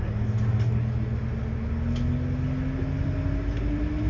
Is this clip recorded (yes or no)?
yes